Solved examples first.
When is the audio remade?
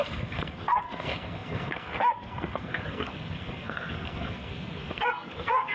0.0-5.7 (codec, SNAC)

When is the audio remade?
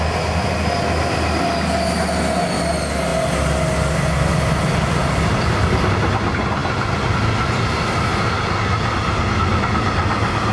none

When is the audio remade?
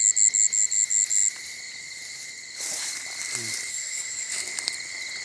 3.7-4.3 (codec, SNAC)